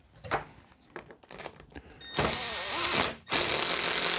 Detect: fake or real real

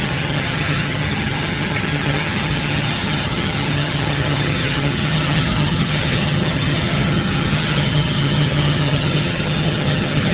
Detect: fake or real fake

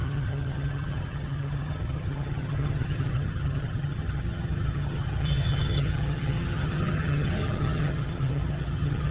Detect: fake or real fake